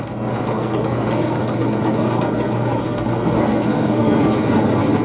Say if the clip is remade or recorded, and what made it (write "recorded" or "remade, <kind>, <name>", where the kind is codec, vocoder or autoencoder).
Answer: remade, codec, SNAC